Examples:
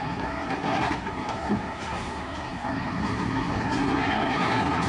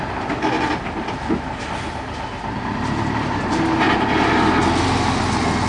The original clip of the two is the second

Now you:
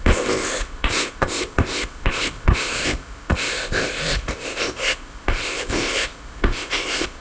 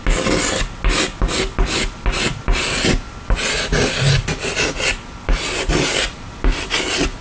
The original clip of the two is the second